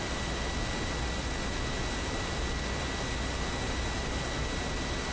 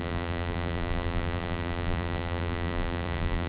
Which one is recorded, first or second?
first